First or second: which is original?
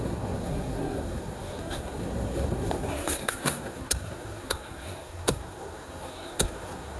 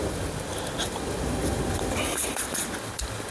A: second